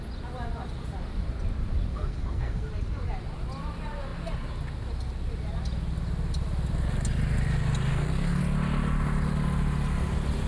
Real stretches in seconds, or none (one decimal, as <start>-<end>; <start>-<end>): 0.0-1.9; 2.7-7.9; 8.4-10.5